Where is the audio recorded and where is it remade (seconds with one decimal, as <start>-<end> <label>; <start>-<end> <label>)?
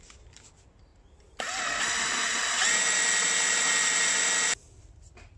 0.0-5.4 recorded